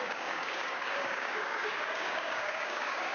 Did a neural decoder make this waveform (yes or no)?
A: yes